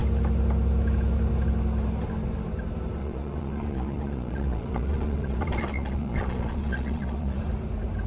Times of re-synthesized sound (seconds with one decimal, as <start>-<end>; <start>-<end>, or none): 3.0-7.4